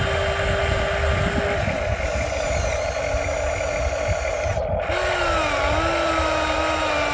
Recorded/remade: recorded